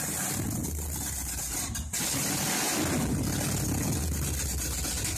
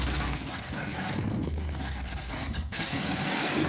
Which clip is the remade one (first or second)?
second